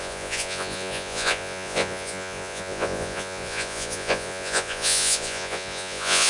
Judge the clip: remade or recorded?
remade